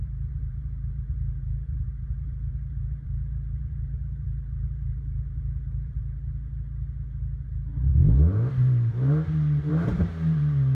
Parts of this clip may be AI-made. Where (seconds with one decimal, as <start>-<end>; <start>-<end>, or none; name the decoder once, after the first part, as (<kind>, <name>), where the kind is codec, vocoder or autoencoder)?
0.0-6.0 (vocoder, BigVGAN v2); 8.5-10.7

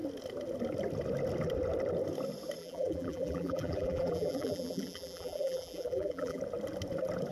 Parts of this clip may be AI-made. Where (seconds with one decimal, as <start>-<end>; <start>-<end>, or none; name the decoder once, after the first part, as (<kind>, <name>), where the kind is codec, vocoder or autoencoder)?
2.6-6.4 (vocoder, BigVGAN v2)

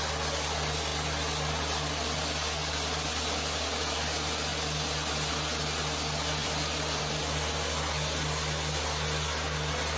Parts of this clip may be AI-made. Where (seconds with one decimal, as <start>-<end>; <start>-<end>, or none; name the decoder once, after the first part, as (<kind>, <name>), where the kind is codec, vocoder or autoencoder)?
4.5-5.3 (vocoder, BigVGAN v2); 6.4-7.2